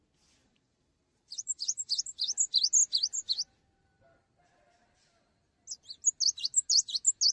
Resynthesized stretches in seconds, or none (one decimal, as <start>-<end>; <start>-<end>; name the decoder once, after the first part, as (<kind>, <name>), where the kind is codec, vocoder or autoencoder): 0.4-2.0 (vocoder, BigVGAN v2)